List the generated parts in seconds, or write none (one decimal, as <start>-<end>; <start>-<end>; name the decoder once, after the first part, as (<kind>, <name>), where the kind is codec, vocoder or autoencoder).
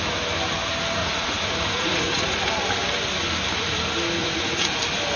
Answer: 1.0-2.5 (vocoder, Vocos); 4.2-4.8